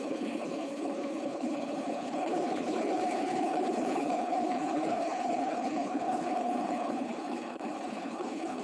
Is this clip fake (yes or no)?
yes